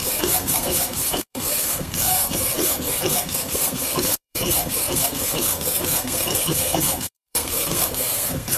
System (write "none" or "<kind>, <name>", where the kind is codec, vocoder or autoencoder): codec, SNAC